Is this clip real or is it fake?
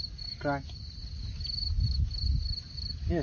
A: real